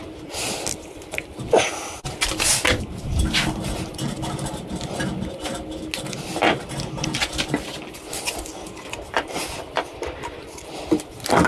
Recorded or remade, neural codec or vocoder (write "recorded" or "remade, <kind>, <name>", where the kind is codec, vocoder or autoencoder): recorded